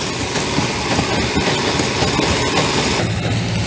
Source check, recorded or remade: recorded